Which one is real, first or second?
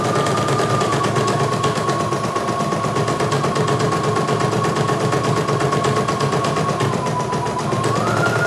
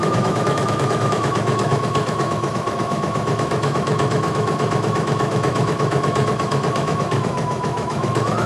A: first